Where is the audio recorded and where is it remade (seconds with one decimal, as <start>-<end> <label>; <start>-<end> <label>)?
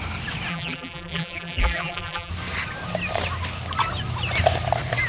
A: 0.0-0.5 recorded; 0.5-2.3 remade; 2.3-5.1 recorded